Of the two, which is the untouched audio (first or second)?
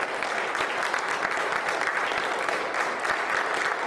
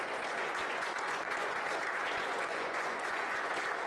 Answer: first